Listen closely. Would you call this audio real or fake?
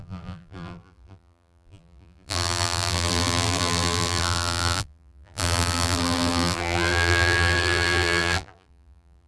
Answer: fake